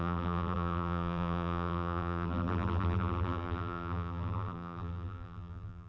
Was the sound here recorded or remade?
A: remade